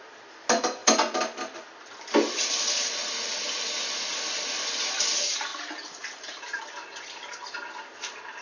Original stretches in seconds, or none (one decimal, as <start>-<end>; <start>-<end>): 0.0-5.5; 6.6-8.4